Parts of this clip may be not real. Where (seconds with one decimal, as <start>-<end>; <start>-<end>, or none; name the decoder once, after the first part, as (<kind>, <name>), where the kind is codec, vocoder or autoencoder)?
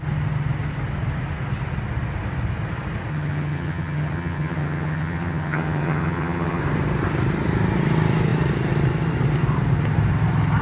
3.1-6.6 (vocoder, HiFi-GAN)